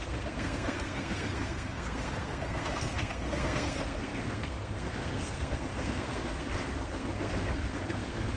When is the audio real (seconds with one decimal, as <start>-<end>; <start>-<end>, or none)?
none